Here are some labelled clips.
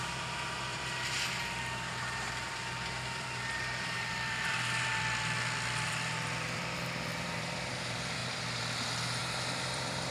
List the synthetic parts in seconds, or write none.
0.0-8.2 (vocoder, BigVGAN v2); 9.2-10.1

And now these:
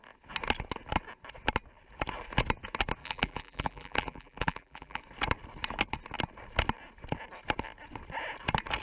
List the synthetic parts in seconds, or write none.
3.0-5.0 (vocoder, BigVGAN v2)

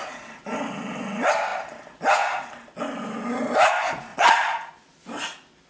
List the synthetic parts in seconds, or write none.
4.1-4.7 (vocoder, Vocos)

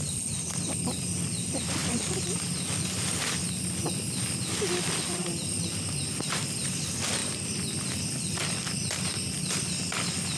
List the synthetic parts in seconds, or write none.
none